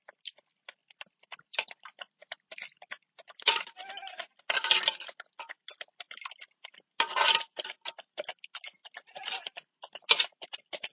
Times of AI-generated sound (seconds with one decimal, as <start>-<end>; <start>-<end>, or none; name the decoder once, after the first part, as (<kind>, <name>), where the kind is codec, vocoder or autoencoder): 0.8-2.9 (vocoder, BigVGAN v2)